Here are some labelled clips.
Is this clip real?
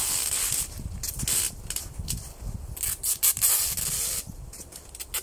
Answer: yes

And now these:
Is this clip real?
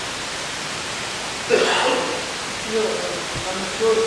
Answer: yes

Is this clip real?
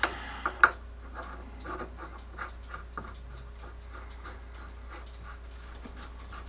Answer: yes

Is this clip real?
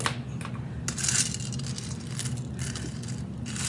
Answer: yes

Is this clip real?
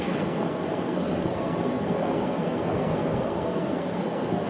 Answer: no